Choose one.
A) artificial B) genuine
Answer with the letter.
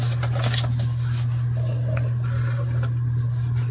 B